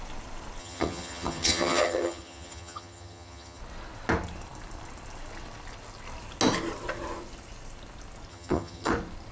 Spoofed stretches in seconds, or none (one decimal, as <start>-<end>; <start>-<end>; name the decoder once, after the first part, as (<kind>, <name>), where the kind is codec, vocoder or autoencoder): 0.6-3.6 (vocoder, HiFi-GAN); 8.3-8.9